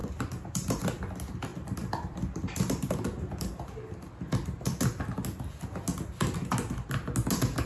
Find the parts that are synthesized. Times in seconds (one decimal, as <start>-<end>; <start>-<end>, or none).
0.0-0.8; 1.5-4.1